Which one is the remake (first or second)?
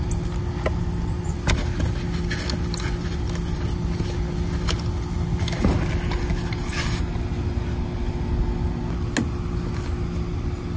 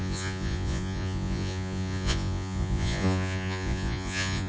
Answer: second